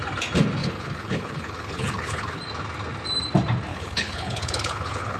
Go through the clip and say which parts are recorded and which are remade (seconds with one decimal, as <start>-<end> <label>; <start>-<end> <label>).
0.0-0.6 recorded; 0.6-2.4 remade; 2.4-3.7 recorded; 3.7-5.2 remade

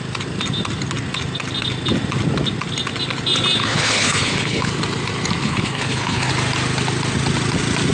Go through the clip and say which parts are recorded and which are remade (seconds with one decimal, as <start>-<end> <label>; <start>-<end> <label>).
0.0-3.6 recorded; 3.6-4.7 remade; 4.7-5.4 recorded; 5.4-6.3 remade; 6.3-7.9 recorded

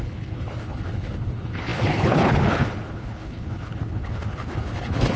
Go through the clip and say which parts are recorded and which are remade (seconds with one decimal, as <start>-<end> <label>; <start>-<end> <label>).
0.0-5.2 remade

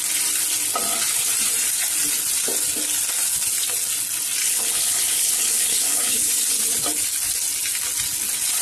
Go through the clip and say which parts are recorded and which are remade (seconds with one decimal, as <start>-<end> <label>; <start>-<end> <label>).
0.0-4.4 recorded; 4.4-6.3 remade; 6.3-8.6 recorded

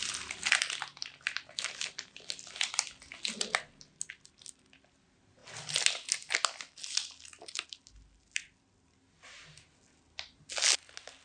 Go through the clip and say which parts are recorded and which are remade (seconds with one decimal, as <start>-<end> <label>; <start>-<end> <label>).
0.0-11.2 recorded

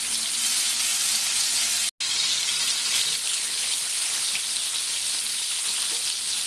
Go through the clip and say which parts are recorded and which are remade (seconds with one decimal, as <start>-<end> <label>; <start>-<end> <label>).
0.0-3.2 recorded; 3.2-4.4 remade; 4.4-5.3 recorded; 5.3-5.8 remade; 5.8-6.5 recorded

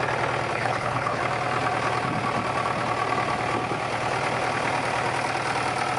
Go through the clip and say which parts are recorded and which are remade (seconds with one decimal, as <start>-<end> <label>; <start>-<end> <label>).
0.0-0.5 recorded; 0.5-1.2 remade; 1.2-6.0 recorded

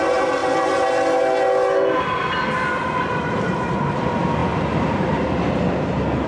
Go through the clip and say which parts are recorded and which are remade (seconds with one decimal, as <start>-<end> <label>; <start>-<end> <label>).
0.0-6.3 recorded